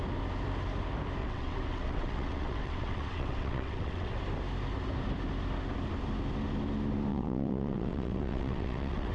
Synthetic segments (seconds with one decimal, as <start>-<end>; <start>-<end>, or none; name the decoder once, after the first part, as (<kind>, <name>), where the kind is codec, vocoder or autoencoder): 1.2-4.2 (vocoder, WaveNeXt); 7.1-9.1